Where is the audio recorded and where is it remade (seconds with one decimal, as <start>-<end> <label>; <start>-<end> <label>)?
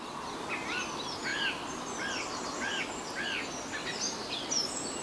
0.0-3.8 recorded; 3.8-4.4 remade; 4.4-5.0 recorded